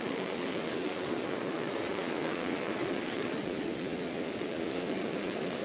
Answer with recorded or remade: remade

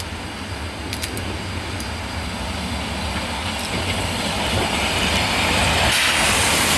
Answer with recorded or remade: recorded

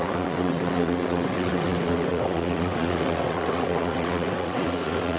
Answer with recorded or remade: remade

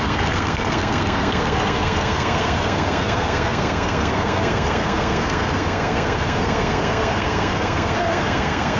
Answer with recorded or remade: remade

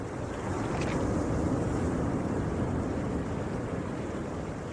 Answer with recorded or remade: recorded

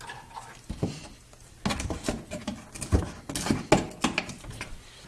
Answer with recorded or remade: recorded